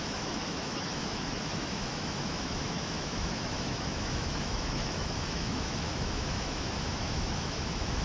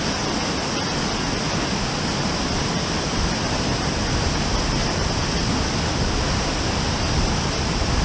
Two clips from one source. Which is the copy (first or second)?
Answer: first